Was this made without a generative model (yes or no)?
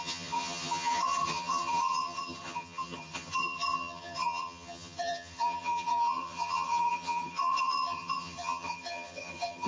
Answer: no